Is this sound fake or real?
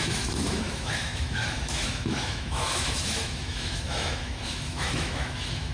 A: fake